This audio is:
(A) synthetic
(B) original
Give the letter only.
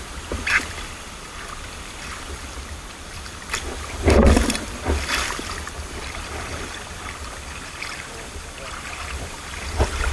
A